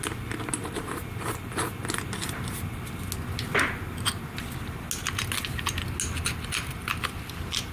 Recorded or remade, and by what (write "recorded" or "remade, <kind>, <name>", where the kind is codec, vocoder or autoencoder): recorded